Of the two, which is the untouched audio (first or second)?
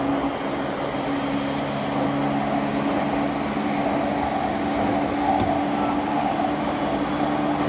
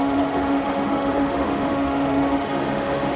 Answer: first